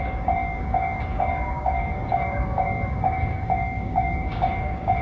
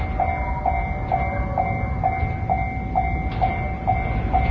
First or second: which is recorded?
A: second